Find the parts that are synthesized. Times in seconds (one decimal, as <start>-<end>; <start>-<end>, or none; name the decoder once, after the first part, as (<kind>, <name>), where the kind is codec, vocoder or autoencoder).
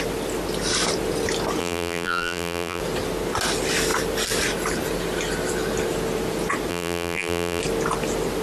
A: 1.6-2.8 (vocoder, BigVGAN v2); 6.7-7.6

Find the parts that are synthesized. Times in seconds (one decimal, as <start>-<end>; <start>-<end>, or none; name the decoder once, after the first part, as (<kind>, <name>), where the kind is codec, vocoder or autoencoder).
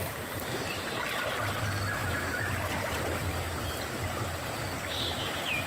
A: 2.0-5.7 (vocoder, BigVGAN v2)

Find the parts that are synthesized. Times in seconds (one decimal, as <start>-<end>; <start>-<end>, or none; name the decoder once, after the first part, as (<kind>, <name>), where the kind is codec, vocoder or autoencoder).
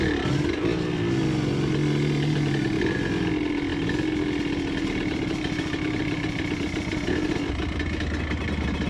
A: none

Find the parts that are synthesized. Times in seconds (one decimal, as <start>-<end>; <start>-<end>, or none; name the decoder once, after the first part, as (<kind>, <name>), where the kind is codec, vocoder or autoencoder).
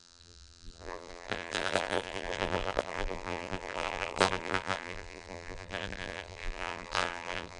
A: 0.0-7.6 (vocoder, BigVGAN v2)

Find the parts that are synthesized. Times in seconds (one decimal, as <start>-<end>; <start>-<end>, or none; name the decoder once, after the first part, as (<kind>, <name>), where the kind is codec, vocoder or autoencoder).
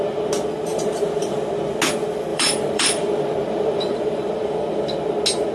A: 0.7-1.4 (vocoder, BigVGAN v2); 2.3-4.3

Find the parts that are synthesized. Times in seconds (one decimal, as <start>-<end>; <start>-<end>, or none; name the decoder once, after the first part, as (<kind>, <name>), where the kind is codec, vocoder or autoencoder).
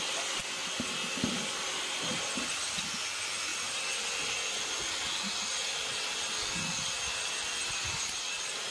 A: 0.0-3.5 (vocoder, BigVGAN v2); 5.3-8.7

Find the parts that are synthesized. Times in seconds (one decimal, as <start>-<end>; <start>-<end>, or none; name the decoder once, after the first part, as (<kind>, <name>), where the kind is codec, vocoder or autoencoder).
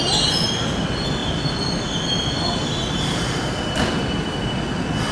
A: none